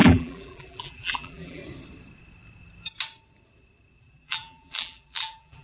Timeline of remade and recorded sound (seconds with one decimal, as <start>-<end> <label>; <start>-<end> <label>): 0.0-1.6 remade; 1.6-4.0 recorded; 4.0-5.6 remade